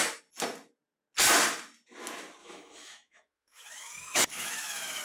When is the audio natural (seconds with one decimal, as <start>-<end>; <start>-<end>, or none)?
0.0-2.4